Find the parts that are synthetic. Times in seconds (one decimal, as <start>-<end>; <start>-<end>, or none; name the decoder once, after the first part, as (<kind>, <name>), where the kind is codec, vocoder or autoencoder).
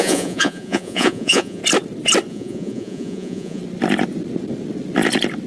0.0-1.6 (vocoder, Vocos); 2.3-3.6